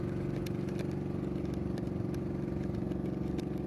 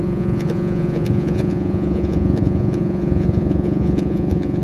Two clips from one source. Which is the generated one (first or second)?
second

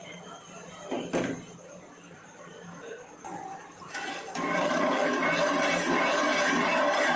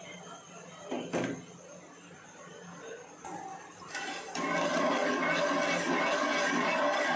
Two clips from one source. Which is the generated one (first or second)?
first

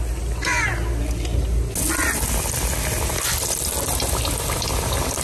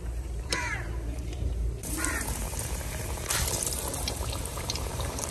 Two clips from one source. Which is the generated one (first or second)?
second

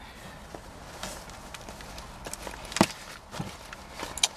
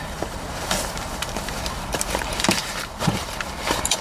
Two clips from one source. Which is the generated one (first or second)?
second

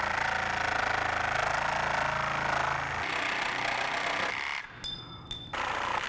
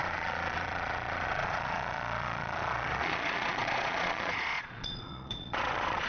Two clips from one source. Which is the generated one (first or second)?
second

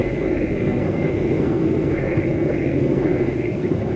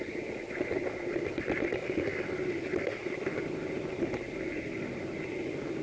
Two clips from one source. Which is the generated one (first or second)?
first